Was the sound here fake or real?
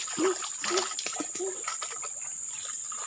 real